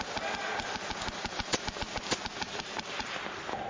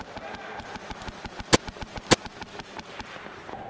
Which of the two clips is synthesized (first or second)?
first